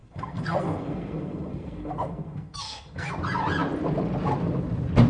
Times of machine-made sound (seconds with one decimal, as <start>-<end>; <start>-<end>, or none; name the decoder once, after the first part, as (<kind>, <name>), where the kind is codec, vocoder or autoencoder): 0.0-3.1 (codec, SNAC)